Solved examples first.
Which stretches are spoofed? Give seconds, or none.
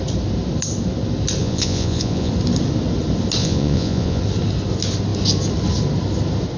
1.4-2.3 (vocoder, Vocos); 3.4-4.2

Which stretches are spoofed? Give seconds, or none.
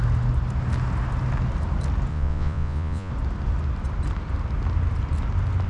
2.1-3.1 (vocoder, Vocos)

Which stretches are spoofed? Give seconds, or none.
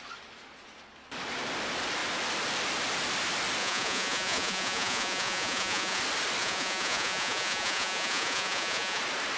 3.6-6.0 (vocoder, Vocos); 6.4-9.0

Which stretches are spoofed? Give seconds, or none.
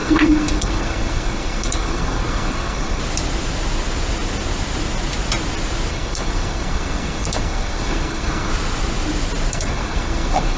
0.0-3.0 (codec, SNAC); 5.9-8.5; 9.5-10.6